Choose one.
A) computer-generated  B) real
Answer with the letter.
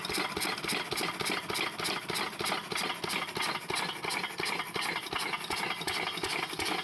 B